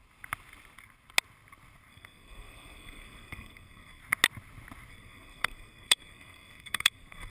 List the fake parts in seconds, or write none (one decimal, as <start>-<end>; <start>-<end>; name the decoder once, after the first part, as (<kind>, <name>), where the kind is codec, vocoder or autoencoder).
1.9-4.0 (codec, SNAC); 4.9-7.3